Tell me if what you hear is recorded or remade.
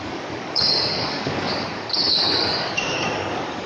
remade